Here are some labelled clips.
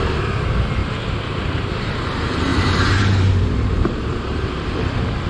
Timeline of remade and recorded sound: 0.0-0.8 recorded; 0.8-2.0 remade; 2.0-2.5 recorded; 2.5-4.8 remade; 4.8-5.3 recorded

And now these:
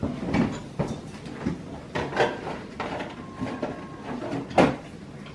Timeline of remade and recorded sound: 0.0-5.3 recorded

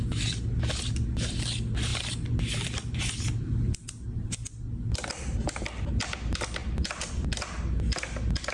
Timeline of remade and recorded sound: 0.0-8.5 recorded

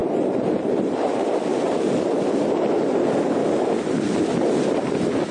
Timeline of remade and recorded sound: 0.0-1.1 remade; 1.1-1.5 recorded; 1.5-2.6 remade; 2.6-5.3 recorded

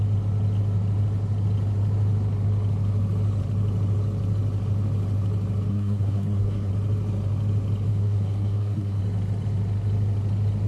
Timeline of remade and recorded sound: 0.0-5.7 recorded; 5.7-6.7 remade; 6.7-7.9 recorded; 7.9-9.0 remade; 9.0-10.7 recorded

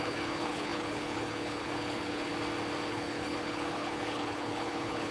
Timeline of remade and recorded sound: 0.0-2.3 remade; 2.3-2.9 recorded; 2.9-5.1 remade